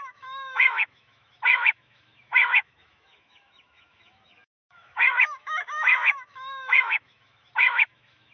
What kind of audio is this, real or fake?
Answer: fake